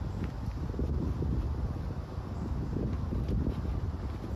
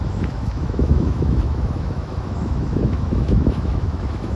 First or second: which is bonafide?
first